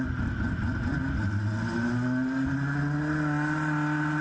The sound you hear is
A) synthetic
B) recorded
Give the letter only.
B